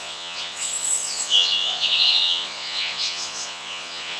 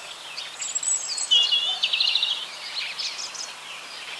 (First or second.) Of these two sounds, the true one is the second